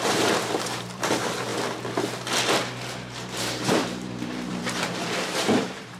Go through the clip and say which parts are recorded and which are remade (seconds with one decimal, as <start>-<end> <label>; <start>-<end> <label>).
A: 0.0-1.5 remade; 1.5-3.4 recorded; 3.4-6.0 remade